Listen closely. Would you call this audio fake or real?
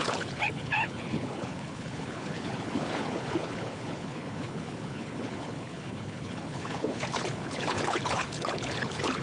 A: fake